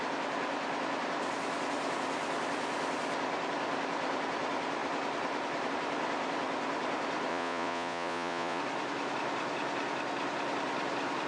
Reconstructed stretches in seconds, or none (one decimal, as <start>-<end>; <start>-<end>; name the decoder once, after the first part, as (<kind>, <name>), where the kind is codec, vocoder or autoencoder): 7.3-8.6 (vocoder, Vocos)